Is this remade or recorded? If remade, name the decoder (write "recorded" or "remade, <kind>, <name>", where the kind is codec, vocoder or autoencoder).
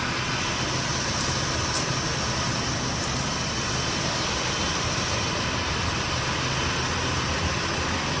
recorded